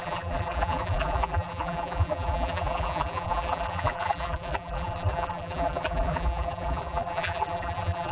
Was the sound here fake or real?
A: fake